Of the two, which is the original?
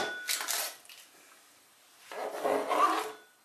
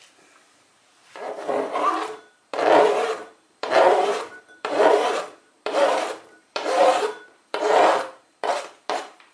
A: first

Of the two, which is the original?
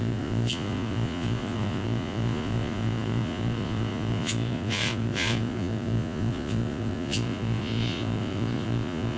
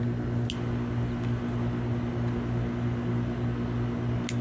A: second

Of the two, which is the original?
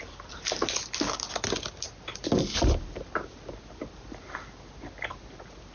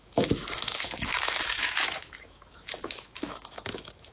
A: first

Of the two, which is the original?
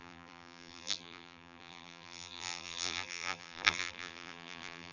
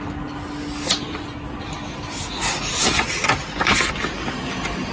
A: second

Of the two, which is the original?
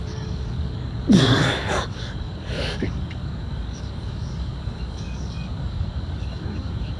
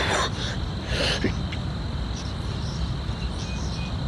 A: second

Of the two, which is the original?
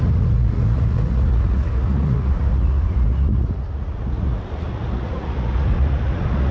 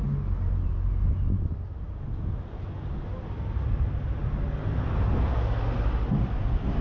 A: second